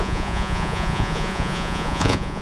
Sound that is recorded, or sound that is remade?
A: remade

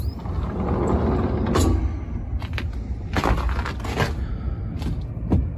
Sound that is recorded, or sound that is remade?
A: recorded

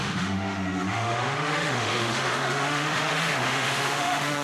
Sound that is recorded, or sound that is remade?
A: remade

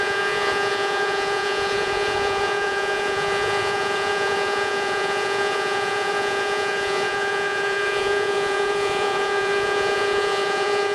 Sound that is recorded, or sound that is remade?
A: remade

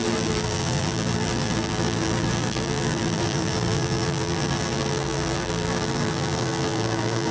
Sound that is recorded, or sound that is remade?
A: remade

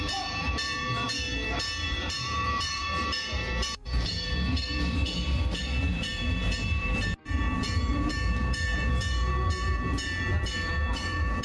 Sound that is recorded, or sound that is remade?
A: remade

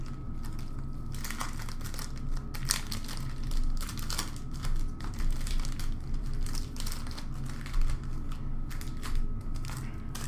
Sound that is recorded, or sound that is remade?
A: recorded